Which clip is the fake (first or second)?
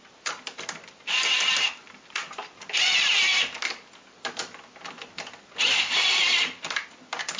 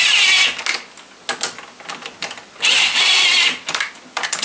first